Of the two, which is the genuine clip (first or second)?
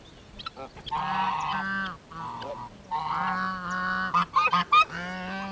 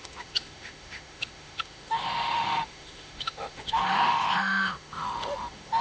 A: first